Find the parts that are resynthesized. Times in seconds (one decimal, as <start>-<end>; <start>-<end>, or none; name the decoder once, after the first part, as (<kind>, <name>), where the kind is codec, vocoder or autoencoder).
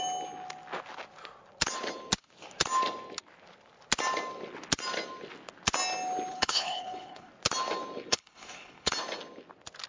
6.3-7.3 (codec, HILCodec); 8.1-8.9